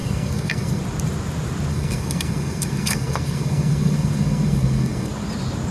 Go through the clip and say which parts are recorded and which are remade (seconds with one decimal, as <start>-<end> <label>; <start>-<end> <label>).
0.0-0.8 remade; 0.8-1.7 recorded; 1.7-5.1 remade; 5.1-5.7 recorded